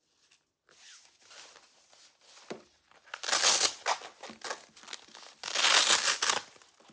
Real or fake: real